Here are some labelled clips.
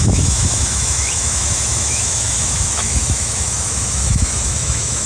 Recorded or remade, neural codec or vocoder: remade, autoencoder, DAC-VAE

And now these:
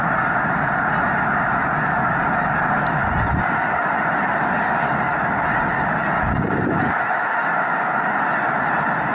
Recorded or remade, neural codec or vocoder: recorded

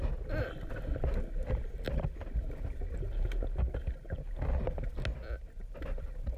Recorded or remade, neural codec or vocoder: recorded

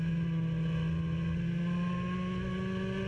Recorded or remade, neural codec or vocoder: recorded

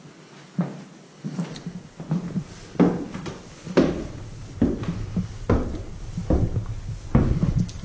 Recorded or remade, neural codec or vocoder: recorded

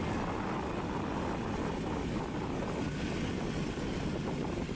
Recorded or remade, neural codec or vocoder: recorded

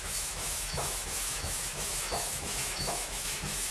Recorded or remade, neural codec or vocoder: remade, autoencoder, DAC-VAE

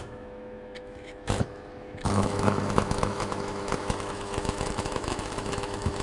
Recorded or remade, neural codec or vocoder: remade, autoencoder, DAC-VAE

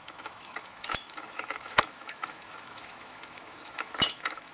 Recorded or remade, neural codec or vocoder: remade, autoencoder, DAC-VAE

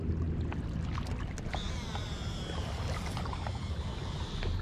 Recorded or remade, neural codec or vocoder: recorded